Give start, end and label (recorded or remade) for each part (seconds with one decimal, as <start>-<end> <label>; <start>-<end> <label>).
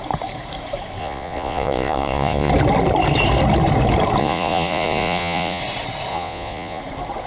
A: 0.0-1.0 recorded; 1.0-2.5 remade; 2.5-4.2 recorded; 4.2-5.6 remade; 5.6-6.1 recorded; 6.1-6.8 remade; 6.8-7.3 recorded